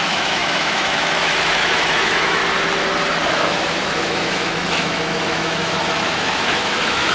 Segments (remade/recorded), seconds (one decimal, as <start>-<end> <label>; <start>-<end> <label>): 0.0-2.4 remade; 2.4-3.3 recorded; 3.3-7.1 remade